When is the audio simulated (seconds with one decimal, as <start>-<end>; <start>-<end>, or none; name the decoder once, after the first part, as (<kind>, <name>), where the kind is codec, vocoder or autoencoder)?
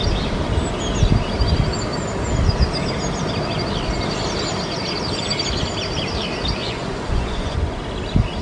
6.6-7.8 (vocoder, Vocos)